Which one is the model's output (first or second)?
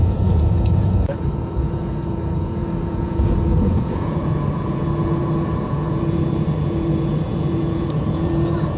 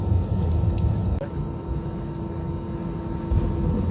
first